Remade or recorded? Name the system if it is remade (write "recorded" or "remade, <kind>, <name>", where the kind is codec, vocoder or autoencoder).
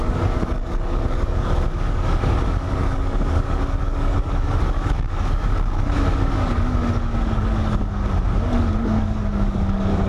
remade, codec, DAC